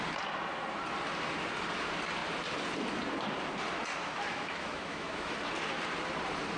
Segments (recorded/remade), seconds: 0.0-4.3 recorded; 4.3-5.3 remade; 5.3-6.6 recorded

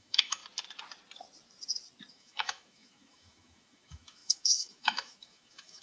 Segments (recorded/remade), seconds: 0.0-0.4 remade; 0.4-2.1 recorded; 2.1-5.8 remade